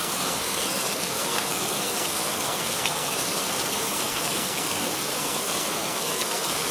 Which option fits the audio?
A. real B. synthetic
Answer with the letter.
B